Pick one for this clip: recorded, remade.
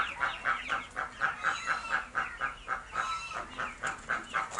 recorded